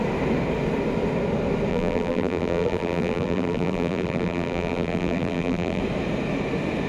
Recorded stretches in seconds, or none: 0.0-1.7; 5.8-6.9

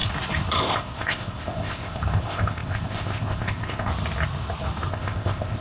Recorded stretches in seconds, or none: 0.0-0.6; 3.9-4.9

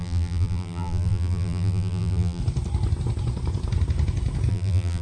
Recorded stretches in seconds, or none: 2.4-4.5

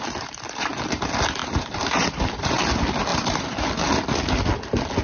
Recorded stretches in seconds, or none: 0.7-1.4; 2.6-3.1; 3.8-5.0

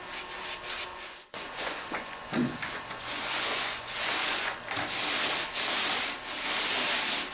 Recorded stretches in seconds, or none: 0.0-0.9; 4.6-7.3